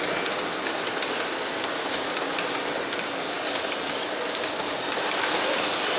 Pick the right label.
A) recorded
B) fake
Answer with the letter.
A